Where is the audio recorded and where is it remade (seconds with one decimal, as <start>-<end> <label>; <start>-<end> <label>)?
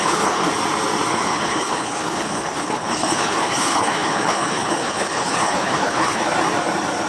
0.0-0.5 remade; 0.5-1.1 recorded; 1.1-6.2 remade; 6.2-7.1 recorded